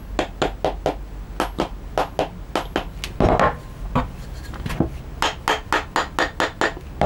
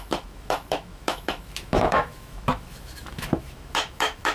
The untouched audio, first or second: first